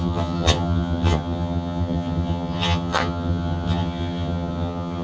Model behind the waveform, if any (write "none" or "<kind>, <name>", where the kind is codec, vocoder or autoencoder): vocoder, HiFi-GAN